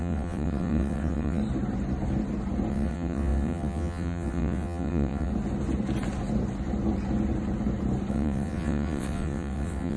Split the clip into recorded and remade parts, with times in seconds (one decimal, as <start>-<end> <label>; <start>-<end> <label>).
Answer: 0.0-1.4 remade; 1.4-2.7 recorded; 2.7-5.3 remade; 5.3-8.1 recorded; 8.1-10.0 remade